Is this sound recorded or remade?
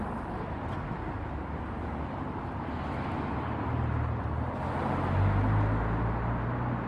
recorded